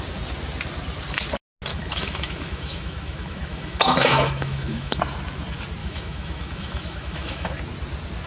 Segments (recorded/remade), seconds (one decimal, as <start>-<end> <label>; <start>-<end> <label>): 0.0-1.7 recorded; 1.7-5.0 remade; 5.0-5.8 recorded; 5.8-7.5 remade; 7.5-8.3 recorded

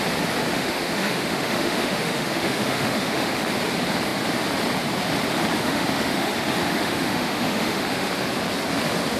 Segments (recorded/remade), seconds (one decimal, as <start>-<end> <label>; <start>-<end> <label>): 0.0-0.5 recorded; 0.5-3.4 remade; 3.4-5.6 recorded; 5.6-6.3 remade; 6.3-6.7 recorded; 6.7-8.1 remade; 8.1-9.2 recorded

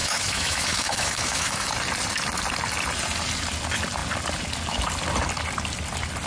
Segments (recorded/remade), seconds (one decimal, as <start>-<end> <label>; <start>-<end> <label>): 0.0-1.7 remade; 1.7-6.3 recorded

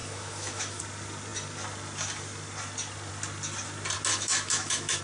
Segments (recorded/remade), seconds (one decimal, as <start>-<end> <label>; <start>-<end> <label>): 0.0-0.8 remade; 0.8-4.1 recorded; 4.1-5.0 remade

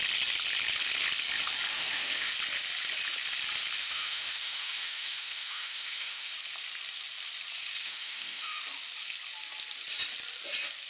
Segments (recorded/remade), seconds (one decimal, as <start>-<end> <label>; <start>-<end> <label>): 0.0-1.7 recorded; 1.7-2.3 remade; 2.3-3.8 recorded; 3.8-6.3 remade; 6.3-7.8 recorded; 7.8-8.6 remade; 8.6-10.9 recorded

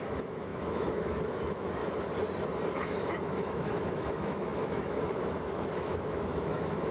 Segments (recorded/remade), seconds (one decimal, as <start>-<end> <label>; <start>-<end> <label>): 0.0-1.8 remade; 1.8-2.7 recorded; 2.7-6.9 remade